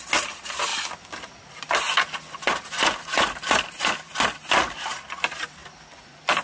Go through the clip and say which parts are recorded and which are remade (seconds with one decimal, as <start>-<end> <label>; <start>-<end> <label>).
0.0-6.4 recorded